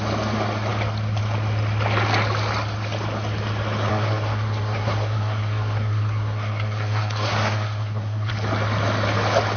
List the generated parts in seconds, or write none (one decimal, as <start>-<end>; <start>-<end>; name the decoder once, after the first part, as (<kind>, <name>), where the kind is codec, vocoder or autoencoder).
3.9-8.3 (codec, SNAC)